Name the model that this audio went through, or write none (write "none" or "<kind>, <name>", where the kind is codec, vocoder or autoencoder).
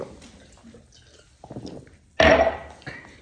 none